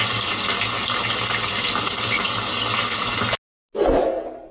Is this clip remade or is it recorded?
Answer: recorded